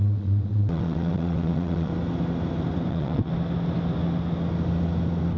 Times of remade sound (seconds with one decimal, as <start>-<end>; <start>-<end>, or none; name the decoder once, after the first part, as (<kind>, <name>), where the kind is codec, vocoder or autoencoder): 0.0-1.9 (vocoder, WaveNeXt); 2.9-3.3